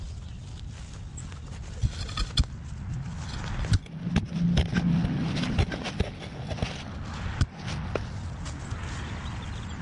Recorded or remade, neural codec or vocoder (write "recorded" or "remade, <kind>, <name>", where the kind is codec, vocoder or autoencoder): recorded